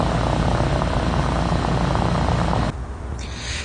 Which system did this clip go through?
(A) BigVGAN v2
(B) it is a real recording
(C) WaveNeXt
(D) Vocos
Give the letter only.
B